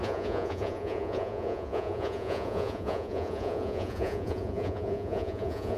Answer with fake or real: fake